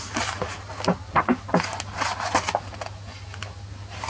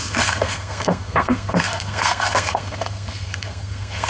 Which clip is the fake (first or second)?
second